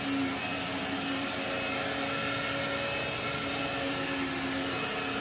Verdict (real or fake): real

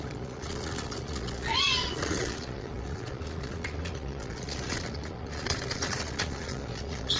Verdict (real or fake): fake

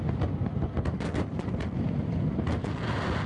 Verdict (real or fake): real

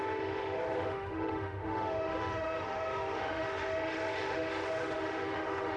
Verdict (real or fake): fake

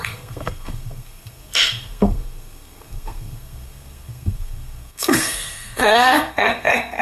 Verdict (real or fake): fake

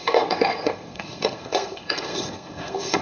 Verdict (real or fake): fake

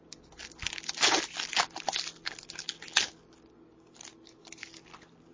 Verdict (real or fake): real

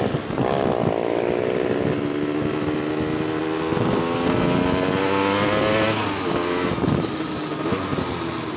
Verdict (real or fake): real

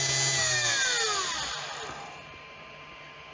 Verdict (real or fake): real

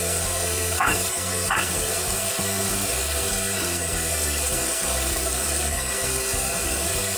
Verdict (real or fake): fake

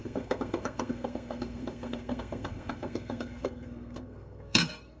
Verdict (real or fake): fake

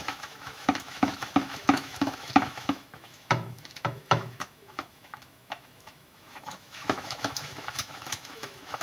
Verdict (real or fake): fake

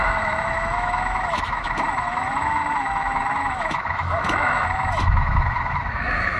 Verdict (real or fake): fake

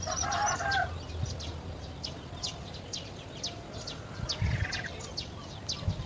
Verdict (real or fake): real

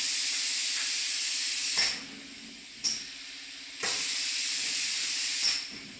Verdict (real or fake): real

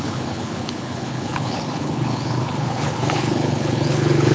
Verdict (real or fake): fake